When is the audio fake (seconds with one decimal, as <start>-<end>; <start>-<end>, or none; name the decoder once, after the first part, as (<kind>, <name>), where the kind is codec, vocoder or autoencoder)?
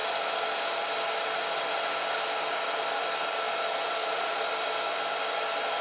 4.0-4.5 (vocoder, Vocos)